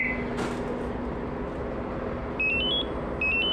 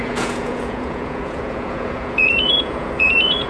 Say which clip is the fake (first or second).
second